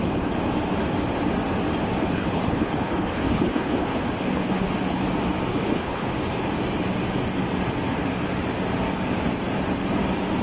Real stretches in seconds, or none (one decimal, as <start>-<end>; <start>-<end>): 0.0-2.0; 5.0-5.5; 6.1-10.4